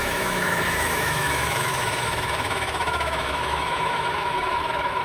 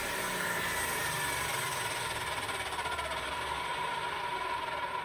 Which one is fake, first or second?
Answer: first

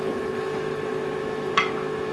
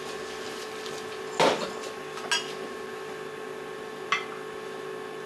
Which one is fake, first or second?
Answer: first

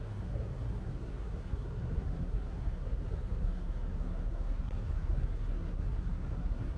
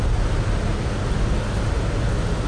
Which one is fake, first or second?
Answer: first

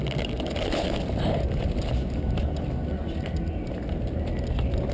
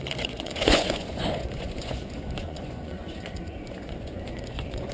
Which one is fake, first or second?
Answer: second